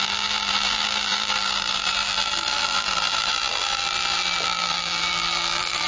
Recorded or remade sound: remade